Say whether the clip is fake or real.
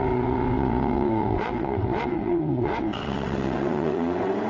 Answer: fake